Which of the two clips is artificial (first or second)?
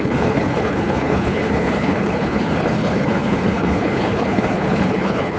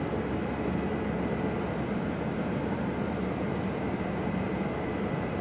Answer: first